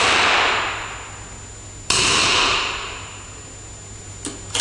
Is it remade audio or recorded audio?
recorded